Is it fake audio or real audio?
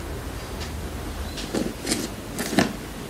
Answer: real